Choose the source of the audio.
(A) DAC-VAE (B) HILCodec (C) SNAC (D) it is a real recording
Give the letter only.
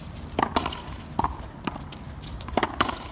D